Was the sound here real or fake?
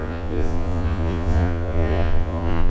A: fake